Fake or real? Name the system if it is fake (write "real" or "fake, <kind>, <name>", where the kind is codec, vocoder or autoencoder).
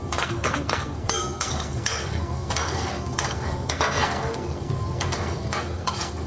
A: fake, codec, SNAC